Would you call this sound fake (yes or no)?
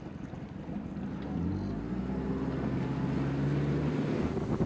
no